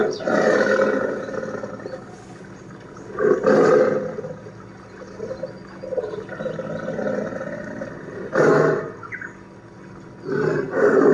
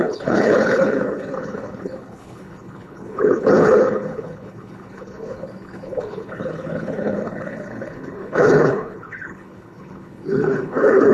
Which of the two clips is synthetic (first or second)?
second